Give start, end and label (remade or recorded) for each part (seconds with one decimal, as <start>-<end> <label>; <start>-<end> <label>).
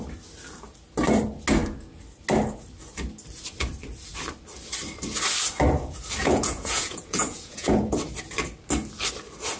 0.0-6.2 recorded; 6.2-7.9 remade; 7.9-9.6 recorded